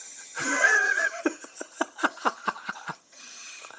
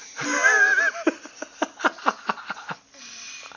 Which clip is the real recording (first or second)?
second